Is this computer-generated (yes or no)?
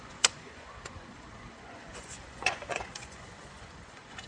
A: yes